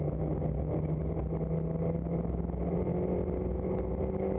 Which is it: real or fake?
real